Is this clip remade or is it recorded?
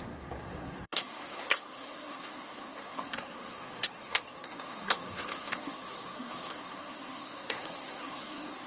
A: remade